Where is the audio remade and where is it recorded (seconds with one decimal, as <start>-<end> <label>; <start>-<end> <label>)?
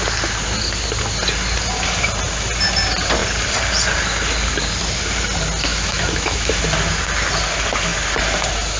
0.0-5.7 recorded; 5.7-6.6 remade; 6.6-8.8 recorded